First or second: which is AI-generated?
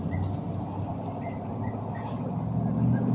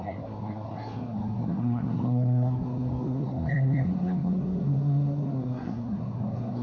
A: second